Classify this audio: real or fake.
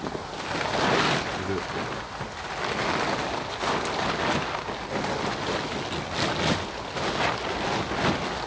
real